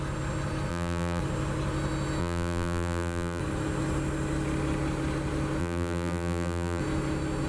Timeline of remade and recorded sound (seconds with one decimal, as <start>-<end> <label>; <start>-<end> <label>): 0.0-0.7 recorded; 0.7-1.2 remade; 1.2-2.2 recorded; 2.2-3.4 remade; 3.4-5.6 recorded; 5.6-6.8 remade; 6.8-7.5 recorded